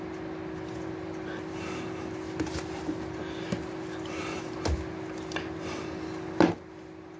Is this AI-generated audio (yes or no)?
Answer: no